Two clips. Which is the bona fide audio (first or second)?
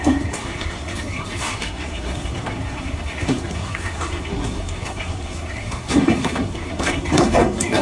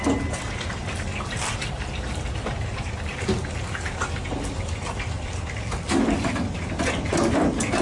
second